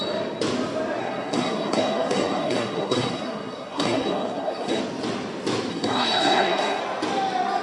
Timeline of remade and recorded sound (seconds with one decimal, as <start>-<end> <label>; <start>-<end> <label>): 0.0-1.0 recorded; 1.0-4.8 remade; 4.8-5.7 recorded; 5.7-6.8 remade; 6.8-7.6 recorded